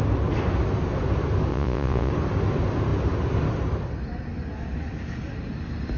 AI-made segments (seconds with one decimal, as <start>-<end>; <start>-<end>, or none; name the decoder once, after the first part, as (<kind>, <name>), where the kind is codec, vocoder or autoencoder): 1.5-2.1 (vocoder, Vocos)

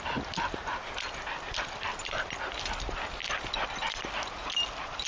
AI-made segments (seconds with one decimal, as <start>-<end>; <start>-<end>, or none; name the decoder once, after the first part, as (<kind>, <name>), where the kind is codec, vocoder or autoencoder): none